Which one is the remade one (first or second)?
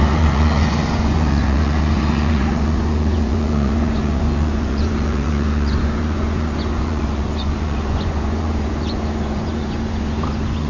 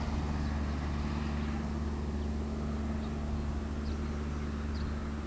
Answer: first